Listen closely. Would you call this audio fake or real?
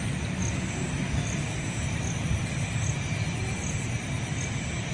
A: real